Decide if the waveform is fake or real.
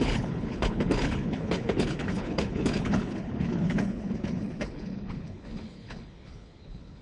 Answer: fake